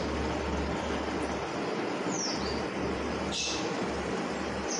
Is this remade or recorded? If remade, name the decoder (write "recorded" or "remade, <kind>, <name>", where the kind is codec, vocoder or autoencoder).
recorded